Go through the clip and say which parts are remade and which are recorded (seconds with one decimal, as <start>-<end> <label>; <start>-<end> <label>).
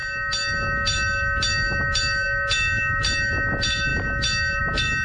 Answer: 0.0-5.0 recorded